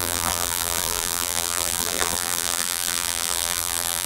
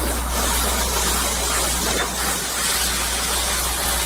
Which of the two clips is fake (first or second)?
first